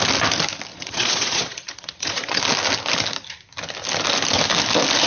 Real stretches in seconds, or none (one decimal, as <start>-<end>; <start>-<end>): 0.0-0.7; 2.4-5.1